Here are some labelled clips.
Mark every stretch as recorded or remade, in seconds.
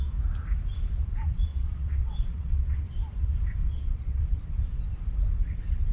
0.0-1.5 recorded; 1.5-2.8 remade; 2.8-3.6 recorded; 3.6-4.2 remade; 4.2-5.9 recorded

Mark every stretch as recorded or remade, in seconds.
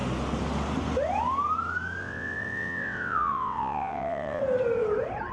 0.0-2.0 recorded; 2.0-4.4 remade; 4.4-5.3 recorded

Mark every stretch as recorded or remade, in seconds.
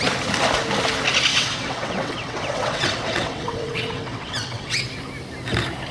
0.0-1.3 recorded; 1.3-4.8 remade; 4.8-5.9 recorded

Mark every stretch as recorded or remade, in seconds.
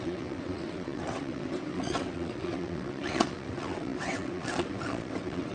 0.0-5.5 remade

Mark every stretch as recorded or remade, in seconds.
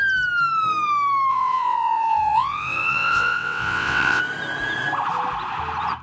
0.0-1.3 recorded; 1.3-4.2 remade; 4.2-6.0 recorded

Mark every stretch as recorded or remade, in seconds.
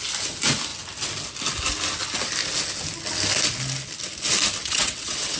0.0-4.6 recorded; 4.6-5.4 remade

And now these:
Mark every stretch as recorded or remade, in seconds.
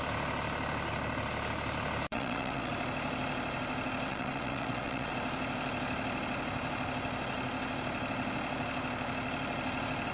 0.0-2.1 recorded; 2.1-2.7 remade; 2.7-4.1 recorded; 4.1-5.1 remade; 5.1-10.1 recorded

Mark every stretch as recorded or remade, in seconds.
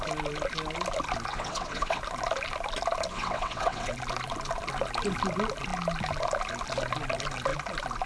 0.0-1.3 recorded; 1.3-2.0 remade; 2.0-3.1 recorded; 3.1-3.9 remade; 3.9-8.1 recorded